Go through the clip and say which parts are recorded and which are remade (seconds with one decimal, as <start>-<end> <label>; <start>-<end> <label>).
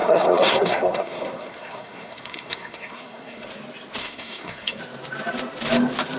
0.0-3.5 remade; 3.5-4.0 recorded; 4.0-4.8 remade; 4.8-6.2 recorded